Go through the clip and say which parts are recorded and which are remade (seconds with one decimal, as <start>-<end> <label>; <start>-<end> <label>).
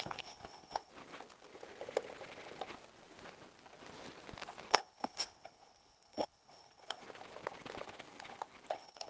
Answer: 0.0-0.9 remade; 0.9-4.7 recorded; 4.7-7.0 remade; 7.0-8.7 recorded; 8.7-9.1 remade